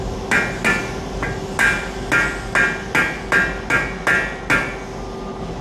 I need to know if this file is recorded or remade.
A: recorded